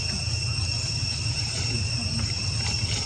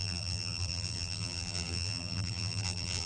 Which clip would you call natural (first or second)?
first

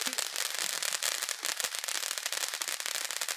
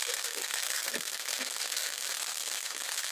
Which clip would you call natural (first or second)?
first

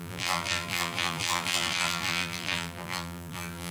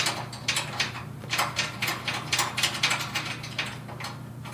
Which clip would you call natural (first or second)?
second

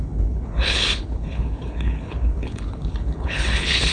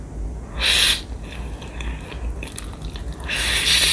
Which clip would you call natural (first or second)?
second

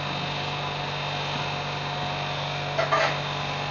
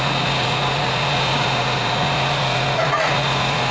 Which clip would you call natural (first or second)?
first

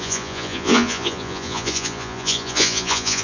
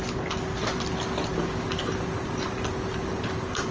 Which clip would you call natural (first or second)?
second